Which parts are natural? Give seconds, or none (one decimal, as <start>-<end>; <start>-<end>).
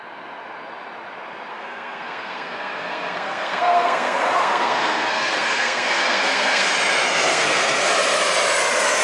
0.0-1.5; 6.7-7.3; 7.9-9.0